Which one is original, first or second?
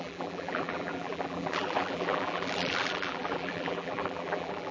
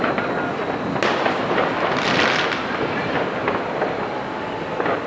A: second